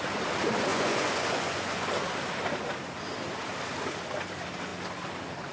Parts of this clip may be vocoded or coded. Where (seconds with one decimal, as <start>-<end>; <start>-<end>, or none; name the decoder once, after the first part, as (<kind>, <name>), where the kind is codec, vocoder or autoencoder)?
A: 0.7-1.9 (vocoder, Vocos)